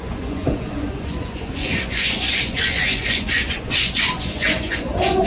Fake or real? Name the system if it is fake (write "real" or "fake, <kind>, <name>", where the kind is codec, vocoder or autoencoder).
fake, vocoder, Vocos